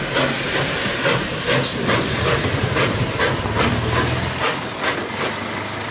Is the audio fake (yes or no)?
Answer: no